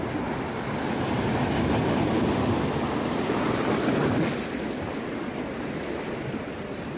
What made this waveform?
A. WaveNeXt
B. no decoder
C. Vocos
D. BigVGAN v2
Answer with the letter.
B